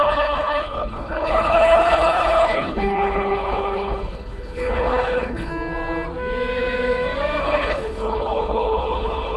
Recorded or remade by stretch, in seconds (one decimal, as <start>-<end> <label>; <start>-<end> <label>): 0.0-5.5 remade; 5.5-7.4 recorded; 7.4-9.4 remade